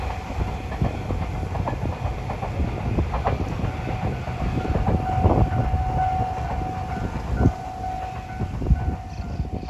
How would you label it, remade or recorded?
recorded